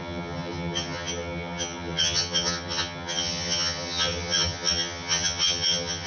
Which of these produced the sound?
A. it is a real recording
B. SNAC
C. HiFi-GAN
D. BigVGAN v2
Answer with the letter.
C